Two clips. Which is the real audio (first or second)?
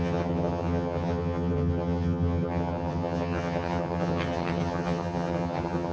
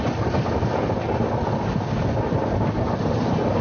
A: second